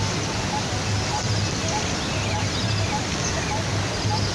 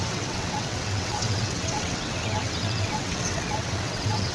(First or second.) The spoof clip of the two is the second